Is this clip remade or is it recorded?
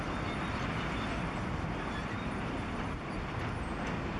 recorded